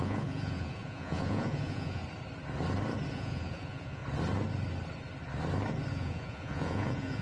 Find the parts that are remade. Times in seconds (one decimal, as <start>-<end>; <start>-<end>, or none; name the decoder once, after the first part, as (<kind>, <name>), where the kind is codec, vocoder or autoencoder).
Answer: 0.0-2.0 (vocoder, Vocos); 3.1-4.0; 5.9-7.2